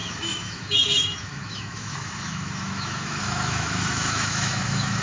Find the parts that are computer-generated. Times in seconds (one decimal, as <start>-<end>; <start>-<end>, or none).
0.0-5.0